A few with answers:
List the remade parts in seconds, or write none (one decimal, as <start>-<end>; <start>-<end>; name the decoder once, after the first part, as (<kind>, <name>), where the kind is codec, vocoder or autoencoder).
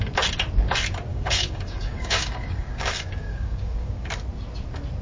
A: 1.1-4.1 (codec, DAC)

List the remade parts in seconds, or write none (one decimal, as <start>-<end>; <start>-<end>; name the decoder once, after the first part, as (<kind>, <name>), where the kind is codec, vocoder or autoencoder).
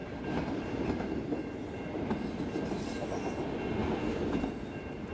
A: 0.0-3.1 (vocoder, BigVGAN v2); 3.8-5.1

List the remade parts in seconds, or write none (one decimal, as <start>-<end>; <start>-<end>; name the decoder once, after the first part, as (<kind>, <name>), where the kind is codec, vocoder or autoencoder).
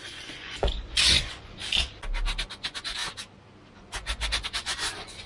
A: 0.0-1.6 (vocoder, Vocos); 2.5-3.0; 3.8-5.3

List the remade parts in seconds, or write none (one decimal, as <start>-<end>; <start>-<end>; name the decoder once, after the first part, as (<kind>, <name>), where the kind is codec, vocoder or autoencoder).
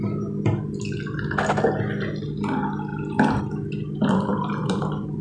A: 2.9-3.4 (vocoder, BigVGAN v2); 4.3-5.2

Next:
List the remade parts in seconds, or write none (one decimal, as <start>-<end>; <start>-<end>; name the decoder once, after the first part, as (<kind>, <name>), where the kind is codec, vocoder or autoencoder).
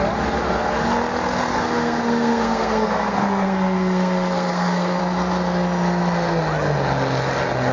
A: 1.5-5.0 (codec, SNAC)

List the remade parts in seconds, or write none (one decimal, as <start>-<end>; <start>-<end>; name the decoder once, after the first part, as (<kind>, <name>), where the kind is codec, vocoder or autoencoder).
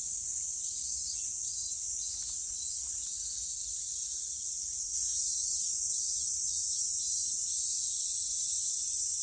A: 0.0-0.8 (vocoder, Vocos); 2.4-9.2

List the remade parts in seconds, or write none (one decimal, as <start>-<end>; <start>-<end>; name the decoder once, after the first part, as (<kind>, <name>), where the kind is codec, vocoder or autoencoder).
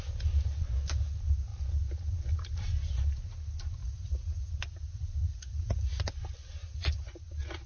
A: 3.8-4.5 (vocoder, Vocos); 5.3-6.0; 6.6-7.2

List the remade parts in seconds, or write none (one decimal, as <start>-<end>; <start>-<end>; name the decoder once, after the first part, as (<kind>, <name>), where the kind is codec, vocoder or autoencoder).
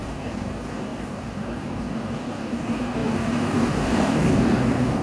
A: 0.0-5.0 (codec, DAC)